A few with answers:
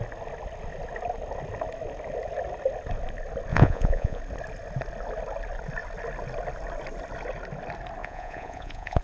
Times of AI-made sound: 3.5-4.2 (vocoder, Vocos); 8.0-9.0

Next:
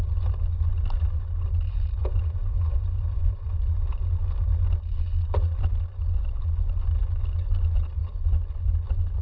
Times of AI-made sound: 2.0-3.5 (vocoder, Vocos)

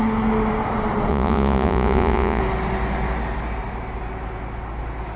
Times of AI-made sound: 1.1-2.4 (vocoder, Vocos)

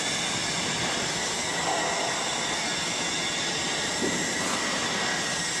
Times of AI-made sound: none